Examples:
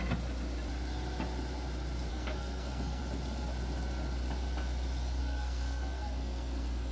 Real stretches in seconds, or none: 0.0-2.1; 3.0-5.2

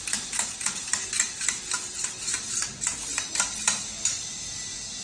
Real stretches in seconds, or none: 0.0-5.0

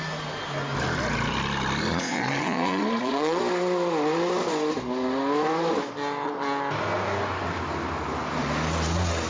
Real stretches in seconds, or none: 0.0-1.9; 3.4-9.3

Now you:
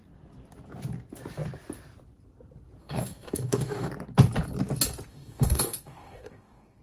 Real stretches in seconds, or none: 0.0-2.8; 3.9-5.1

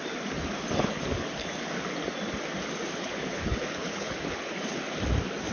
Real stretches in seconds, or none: 0.0-2.9; 4.5-5.5

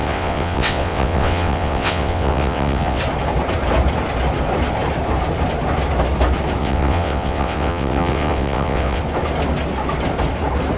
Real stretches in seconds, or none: 3.0-6.6; 9.0-10.8

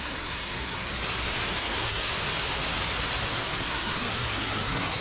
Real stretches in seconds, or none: 0.8-1.5; 2.1-3.3